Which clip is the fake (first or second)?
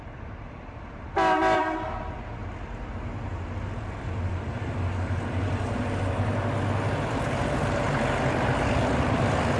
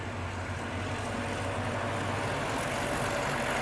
first